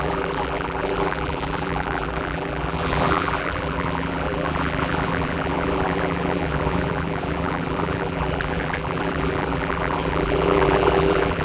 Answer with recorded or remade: remade